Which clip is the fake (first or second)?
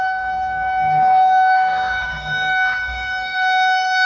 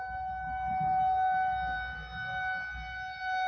first